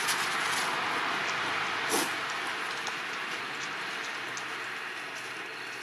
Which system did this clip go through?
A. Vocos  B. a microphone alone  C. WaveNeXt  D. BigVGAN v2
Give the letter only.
B